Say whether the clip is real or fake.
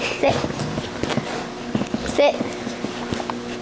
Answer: real